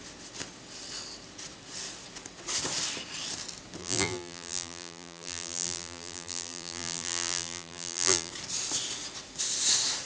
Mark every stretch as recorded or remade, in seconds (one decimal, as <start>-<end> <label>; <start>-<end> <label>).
0.0-3.8 recorded; 3.8-8.3 remade; 8.3-10.1 recorded